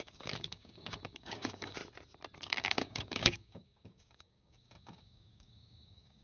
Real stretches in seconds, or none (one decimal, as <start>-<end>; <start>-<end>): 1.8-2.4